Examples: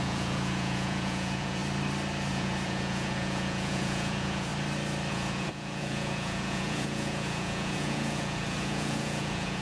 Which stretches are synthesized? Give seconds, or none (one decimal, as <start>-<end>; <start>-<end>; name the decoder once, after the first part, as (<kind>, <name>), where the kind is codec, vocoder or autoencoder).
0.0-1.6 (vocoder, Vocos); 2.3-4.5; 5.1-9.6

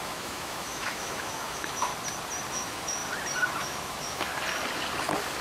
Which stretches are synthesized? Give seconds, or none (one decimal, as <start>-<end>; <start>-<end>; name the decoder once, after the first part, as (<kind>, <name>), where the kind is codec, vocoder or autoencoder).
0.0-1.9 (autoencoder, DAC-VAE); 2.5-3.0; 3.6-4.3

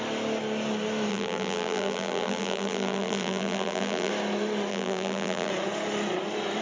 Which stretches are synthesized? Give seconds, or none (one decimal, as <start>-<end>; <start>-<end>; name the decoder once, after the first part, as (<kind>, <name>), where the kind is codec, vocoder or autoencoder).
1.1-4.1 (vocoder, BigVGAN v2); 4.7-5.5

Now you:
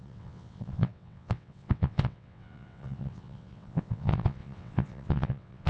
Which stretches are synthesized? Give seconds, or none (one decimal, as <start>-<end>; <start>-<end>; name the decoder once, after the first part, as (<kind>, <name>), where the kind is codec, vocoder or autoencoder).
0.0-5.7 (vocoder, WaveNeXt)